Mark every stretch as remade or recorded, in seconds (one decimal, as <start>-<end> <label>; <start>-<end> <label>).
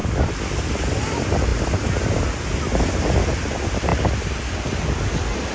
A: 0.0-5.5 recorded